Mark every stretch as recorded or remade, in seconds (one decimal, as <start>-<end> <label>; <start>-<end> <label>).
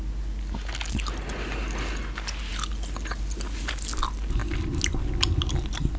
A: 0.0-6.0 recorded